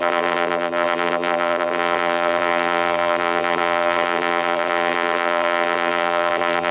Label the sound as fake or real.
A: fake